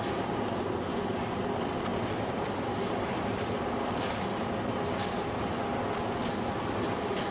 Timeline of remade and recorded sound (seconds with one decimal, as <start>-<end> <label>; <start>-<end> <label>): 0.0-1.9 recorded; 1.9-5.9 remade; 5.9-7.3 recorded